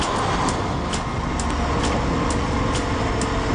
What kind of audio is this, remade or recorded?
recorded